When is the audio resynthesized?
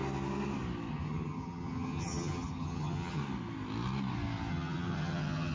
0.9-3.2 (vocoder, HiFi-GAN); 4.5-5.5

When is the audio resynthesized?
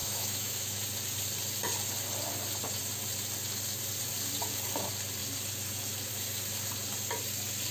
0.0-0.8 (autoencoder, DAC-VAE)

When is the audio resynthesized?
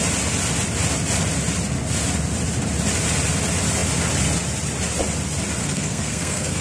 5.6-6.6 (codec, SNAC)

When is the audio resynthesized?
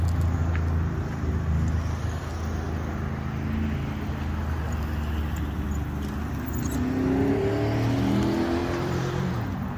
8.6-9.2 (vocoder, BigVGAN v2)